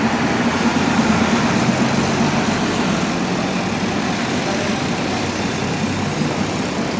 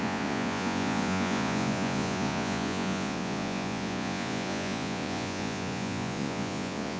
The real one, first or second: first